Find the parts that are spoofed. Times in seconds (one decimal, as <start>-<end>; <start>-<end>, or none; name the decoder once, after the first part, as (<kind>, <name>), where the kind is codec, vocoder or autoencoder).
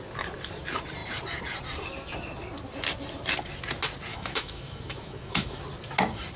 4.1-5.6 (autoencoder, DAC-VAE)